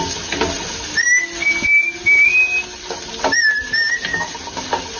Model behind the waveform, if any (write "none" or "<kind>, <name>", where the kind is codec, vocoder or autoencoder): none